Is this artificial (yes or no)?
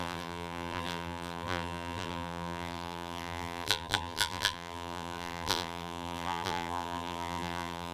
yes